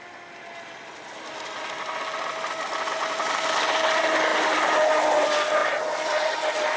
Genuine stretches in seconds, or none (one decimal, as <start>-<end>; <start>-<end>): 0.0-6.8